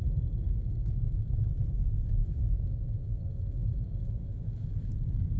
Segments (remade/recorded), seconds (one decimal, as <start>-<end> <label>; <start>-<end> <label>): 0.0-0.4 recorded; 0.4-1.5 remade; 1.5-2.2 recorded; 2.2-4.9 remade; 4.9-5.4 recorded